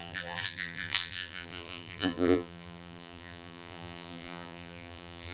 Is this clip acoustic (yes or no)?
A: no